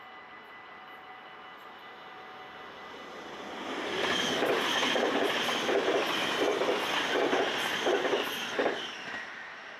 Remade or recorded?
recorded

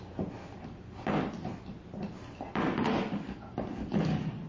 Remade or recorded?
recorded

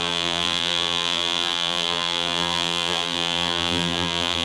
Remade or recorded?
remade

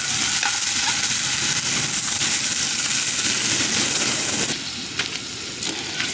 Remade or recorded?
recorded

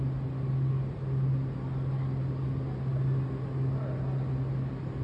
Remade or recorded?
recorded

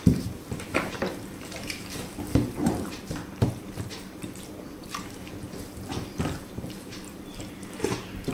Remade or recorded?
remade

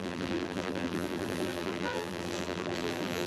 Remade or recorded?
remade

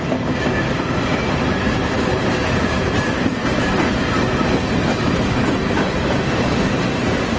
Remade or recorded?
remade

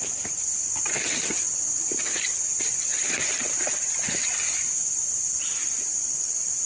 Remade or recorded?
remade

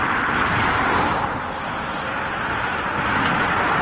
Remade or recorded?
remade